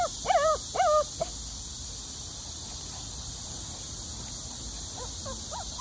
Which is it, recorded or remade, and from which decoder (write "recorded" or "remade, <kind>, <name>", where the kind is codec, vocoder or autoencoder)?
recorded